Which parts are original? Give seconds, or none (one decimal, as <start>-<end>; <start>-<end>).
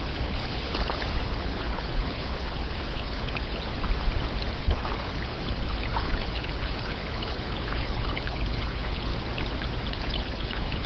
3.7-4.6; 9.1-9.9